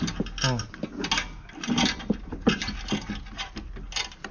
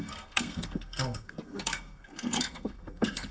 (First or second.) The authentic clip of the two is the first